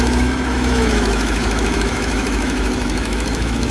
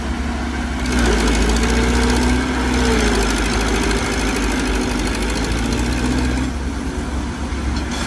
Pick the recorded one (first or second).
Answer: second